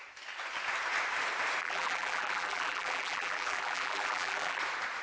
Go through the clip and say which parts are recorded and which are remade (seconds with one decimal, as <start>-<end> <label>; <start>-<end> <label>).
0.0-1.6 recorded; 1.6-4.6 remade; 4.6-5.0 recorded